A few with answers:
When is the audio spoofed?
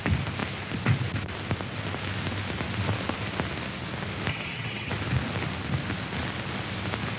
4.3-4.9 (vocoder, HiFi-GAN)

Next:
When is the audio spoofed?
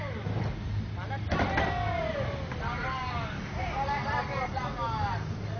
none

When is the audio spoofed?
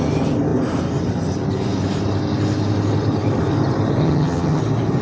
4.0-4.6 (vocoder, HiFi-GAN)